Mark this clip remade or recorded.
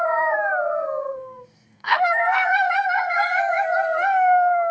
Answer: remade